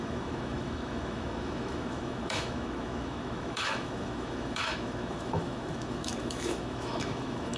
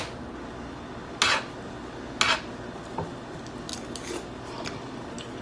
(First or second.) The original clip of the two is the second